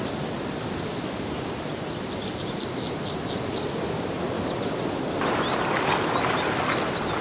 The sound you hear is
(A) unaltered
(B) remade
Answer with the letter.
A